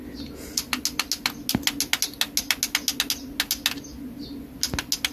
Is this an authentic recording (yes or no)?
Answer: yes